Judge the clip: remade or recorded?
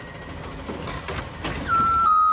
recorded